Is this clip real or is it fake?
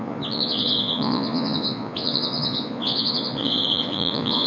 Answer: fake